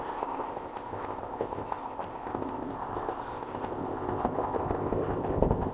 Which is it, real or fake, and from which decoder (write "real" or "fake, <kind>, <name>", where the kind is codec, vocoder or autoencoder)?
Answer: fake, codec, ZipCodec